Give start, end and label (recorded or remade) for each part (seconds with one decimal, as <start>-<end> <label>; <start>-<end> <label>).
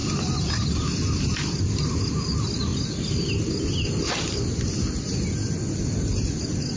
0.0-6.8 recorded